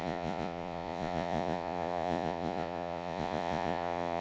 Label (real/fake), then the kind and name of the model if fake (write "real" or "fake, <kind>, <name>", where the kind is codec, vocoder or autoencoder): fake, vocoder, Vocos